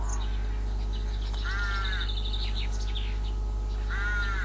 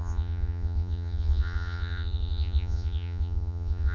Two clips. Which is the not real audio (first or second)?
second